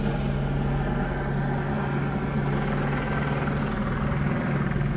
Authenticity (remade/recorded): recorded